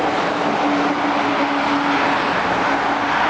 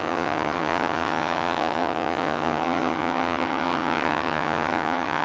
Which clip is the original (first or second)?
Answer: first